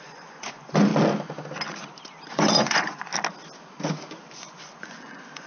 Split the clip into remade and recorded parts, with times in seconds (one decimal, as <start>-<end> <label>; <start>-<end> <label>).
0.0-0.9 remade; 0.9-2.3 recorded; 2.3-3.1 remade; 3.1-4.4 recorded; 4.4-5.5 remade